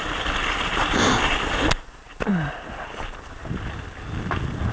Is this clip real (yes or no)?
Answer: yes